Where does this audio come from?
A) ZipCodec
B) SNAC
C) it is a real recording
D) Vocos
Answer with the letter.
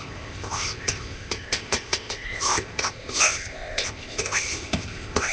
A